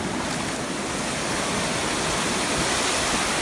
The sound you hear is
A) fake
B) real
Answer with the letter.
B